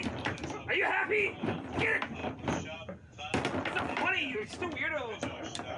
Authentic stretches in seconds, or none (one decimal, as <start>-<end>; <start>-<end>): 2.2-3.8